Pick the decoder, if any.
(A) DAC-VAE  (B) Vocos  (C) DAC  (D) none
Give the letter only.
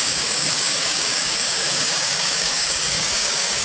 C